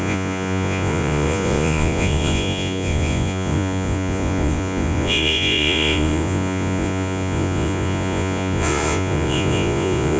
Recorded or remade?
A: remade